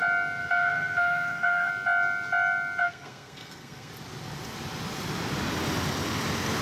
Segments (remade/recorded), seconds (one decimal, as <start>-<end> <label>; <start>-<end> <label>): 0.0-0.4 recorded; 0.4-1.7 remade; 1.7-2.8 recorded; 2.8-3.9 remade; 3.9-6.6 recorded